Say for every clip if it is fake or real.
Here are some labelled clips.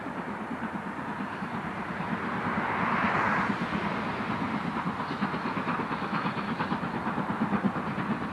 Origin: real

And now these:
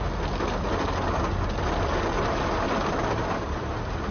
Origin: real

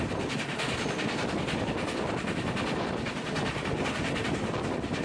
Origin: real